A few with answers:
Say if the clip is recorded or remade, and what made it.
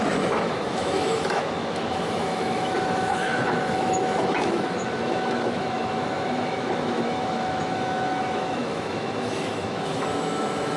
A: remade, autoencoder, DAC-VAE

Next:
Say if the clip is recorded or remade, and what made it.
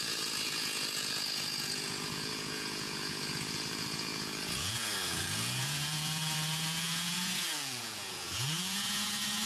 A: remade, vocoder, Vocos